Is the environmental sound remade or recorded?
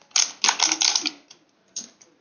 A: recorded